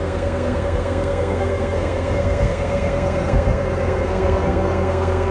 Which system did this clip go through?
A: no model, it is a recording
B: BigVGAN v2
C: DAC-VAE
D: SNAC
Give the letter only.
D